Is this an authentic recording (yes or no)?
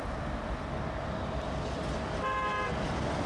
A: yes